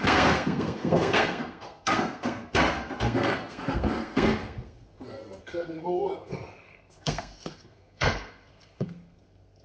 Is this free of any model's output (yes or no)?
no